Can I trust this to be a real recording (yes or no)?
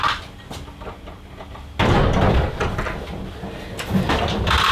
yes